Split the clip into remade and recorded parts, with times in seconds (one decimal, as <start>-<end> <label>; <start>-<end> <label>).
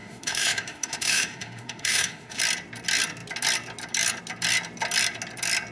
0.0-2.4 remade; 2.4-5.7 recorded